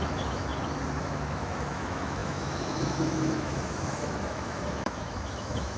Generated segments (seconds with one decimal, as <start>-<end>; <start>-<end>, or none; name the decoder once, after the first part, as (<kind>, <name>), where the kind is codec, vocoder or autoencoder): 0.0-0.5 (autoencoder, DAC-VAE); 1.0-5.8